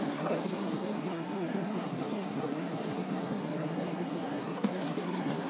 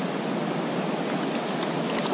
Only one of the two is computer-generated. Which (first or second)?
first